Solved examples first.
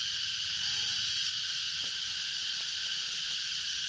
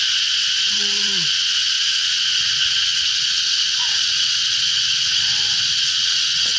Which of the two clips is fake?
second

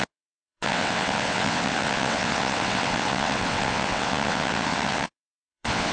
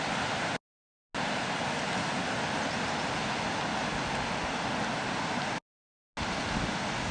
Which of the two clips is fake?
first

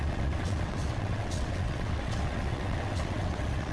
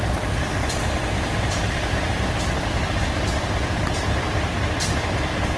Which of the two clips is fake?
first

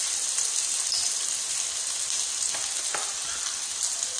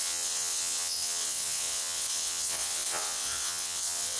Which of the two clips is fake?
second